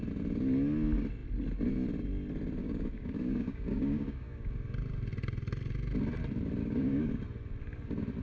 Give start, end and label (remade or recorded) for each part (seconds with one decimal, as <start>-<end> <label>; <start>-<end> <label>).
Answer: 0.0-2.6 recorded; 2.6-4.5 remade; 4.5-6.6 recorded; 6.6-7.1 remade; 7.1-8.2 recorded